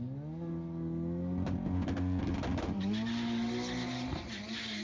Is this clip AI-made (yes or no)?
no